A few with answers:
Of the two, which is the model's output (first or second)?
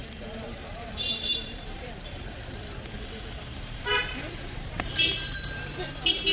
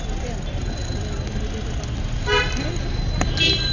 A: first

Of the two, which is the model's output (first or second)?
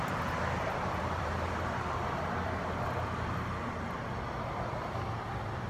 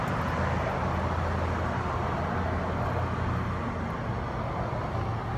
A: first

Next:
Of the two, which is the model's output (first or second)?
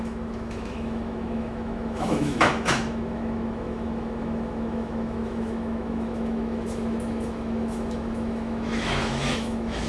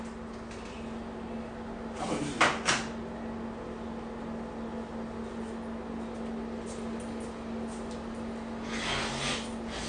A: first